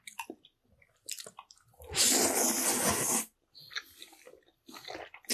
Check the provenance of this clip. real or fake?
real